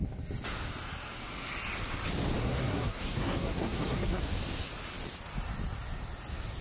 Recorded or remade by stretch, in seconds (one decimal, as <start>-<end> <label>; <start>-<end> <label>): 0.0-2.4 recorded; 2.4-4.2 remade; 4.2-6.6 recorded